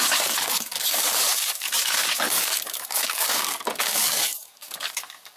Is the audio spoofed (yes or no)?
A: yes